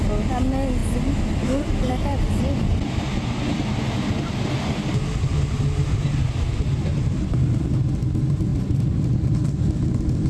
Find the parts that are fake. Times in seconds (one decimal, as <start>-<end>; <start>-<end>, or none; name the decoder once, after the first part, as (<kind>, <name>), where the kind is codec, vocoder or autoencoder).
none

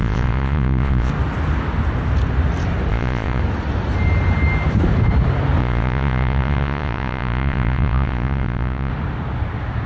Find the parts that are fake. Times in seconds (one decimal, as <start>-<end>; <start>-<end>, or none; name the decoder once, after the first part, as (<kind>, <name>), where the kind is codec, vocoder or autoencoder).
0.0-1.1 (vocoder, Vocos); 2.9-3.4; 5.6-8.9

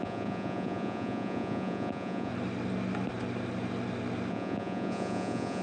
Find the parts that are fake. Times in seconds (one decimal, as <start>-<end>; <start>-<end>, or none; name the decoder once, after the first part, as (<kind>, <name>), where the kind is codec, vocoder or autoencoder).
0.0-2.3 (vocoder, Vocos); 4.3-5.6

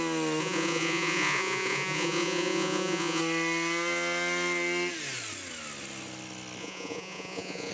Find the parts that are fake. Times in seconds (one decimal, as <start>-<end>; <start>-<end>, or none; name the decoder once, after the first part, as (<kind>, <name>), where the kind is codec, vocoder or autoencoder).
0.4-3.2 (vocoder, Vocos); 6.6-7.7

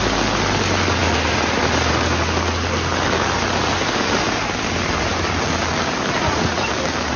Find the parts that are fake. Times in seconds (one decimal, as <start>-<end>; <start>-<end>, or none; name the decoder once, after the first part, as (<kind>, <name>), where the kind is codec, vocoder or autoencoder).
6.2-6.7 (vocoder, Vocos)

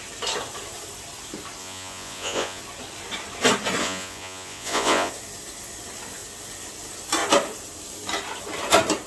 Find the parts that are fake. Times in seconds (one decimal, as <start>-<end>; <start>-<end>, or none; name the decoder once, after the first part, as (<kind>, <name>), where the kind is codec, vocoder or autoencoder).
1.6-2.6 (vocoder, Vocos); 3.8-5.1